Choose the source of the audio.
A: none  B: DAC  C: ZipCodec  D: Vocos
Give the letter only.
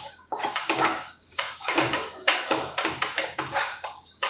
B